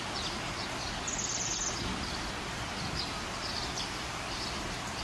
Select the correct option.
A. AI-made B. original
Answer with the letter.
B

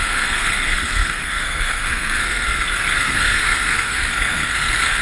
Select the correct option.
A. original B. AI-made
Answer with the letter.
B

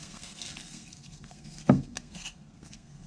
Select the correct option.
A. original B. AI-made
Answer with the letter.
B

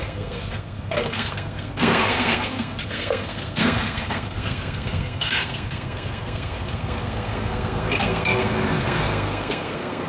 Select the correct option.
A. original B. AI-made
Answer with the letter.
B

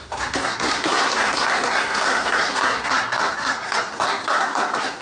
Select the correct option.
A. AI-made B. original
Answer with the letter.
A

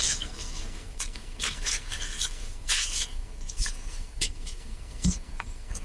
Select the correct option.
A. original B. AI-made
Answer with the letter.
B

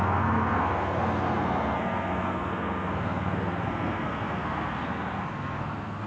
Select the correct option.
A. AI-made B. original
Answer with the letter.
A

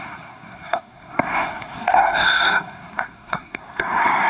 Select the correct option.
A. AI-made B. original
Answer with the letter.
A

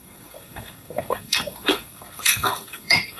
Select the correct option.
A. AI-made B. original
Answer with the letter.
A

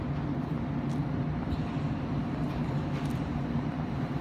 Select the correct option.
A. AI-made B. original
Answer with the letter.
B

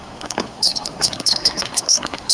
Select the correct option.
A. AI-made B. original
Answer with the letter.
A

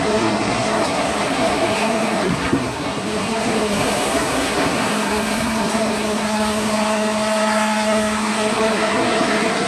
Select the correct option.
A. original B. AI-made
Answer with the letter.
B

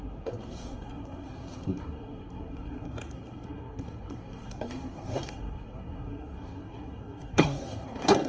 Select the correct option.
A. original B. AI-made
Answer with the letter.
B